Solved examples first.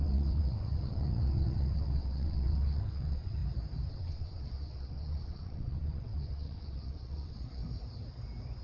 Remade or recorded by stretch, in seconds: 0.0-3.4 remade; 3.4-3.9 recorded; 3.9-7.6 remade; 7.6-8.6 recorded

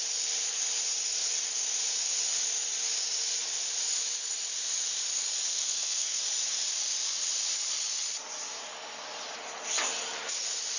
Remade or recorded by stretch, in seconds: 0.0-5.5 recorded; 5.5-6.2 remade; 6.2-10.8 recorded

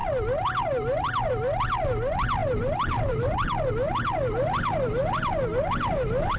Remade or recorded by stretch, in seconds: 0.0-2.4 recorded; 2.4-3.7 remade; 3.7-6.4 recorded

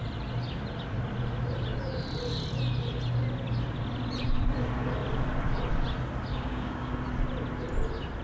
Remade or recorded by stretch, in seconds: 0.0-6.3 recorded; 6.3-6.9 remade; 6.9-8.2 recorded

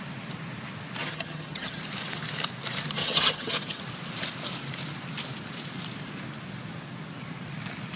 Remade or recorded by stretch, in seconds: 0.0-1.0 recorded; 1.0-1.8 remade; 1.8-3.0 recorded; 3.0-3.8 remade; 3.8-8.0 recorded

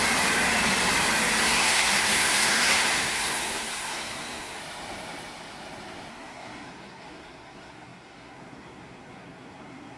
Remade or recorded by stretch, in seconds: 0.0-1.4 recorded; 1.4-4.6 remade; 4.6-6.1 recorded; 6.1-10.0 remade